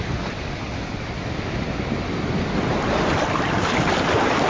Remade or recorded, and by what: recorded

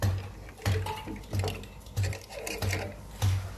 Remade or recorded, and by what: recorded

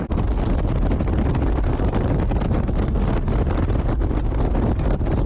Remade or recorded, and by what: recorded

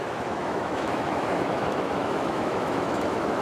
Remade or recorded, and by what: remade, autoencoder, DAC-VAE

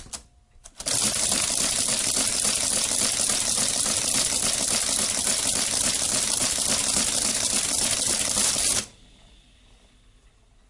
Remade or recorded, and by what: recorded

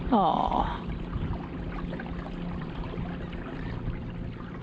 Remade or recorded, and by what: recorded